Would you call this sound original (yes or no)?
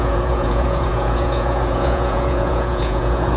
no